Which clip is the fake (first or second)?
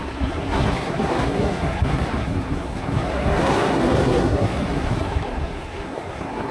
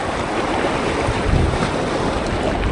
first